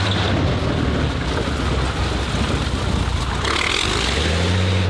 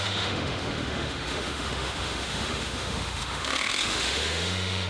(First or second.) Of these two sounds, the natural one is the first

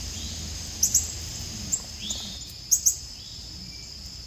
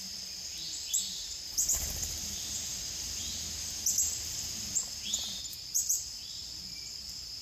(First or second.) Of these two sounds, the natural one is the first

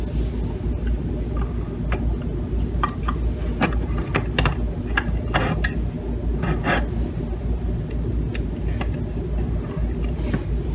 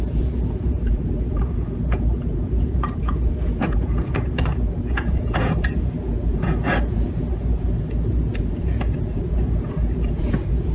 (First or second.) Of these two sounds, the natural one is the first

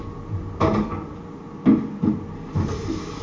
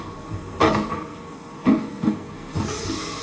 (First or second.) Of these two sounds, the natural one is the first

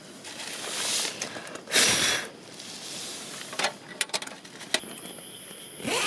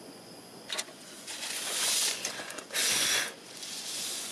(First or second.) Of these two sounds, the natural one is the first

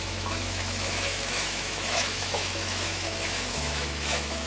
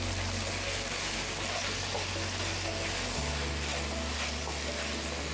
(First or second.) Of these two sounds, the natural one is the second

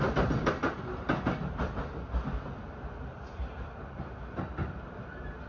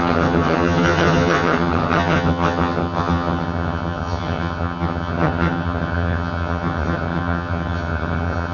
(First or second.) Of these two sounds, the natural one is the first